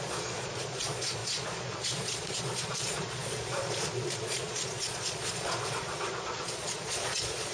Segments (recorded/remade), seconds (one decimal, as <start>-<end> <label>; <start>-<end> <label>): 0.0-7.5 remade